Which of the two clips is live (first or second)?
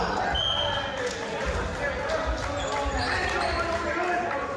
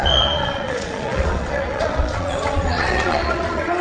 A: first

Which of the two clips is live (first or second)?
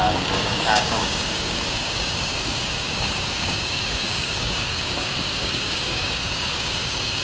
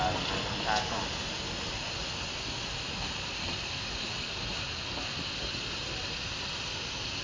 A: second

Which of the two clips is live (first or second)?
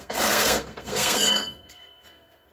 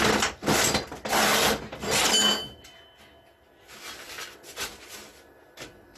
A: second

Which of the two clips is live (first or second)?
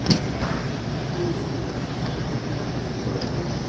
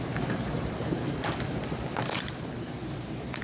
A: first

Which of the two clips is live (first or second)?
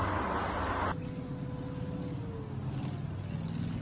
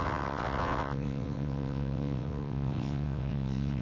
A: first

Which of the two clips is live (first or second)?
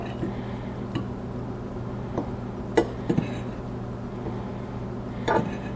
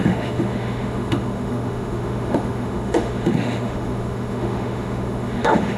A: first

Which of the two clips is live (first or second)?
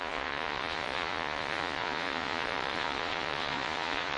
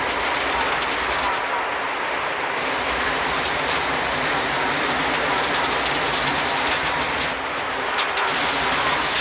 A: second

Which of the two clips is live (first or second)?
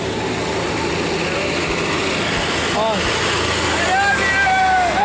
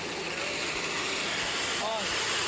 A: first